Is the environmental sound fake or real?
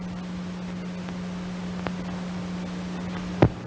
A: real